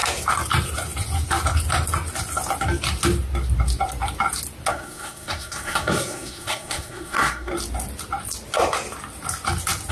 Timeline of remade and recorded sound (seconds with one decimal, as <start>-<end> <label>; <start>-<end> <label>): 0.0-4.7 recorded; 4.7-7.5 remade; 7.5-9.9 recorded